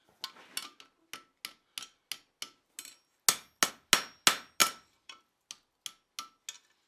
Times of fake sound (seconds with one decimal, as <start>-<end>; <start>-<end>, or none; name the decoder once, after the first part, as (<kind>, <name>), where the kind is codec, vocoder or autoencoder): 4.6-5.4 (vocoder, BigVGAN v2)